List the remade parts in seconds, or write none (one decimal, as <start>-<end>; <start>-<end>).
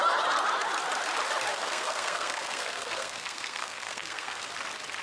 1.5-4.5